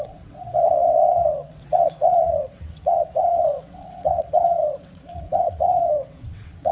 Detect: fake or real fake